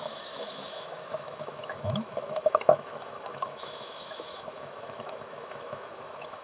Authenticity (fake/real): fake